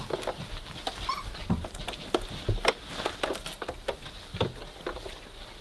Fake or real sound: real